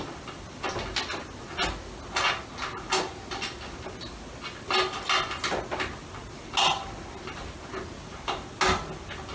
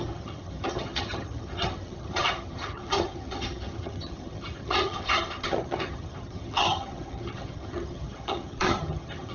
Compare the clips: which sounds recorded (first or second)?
first